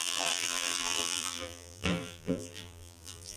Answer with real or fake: fake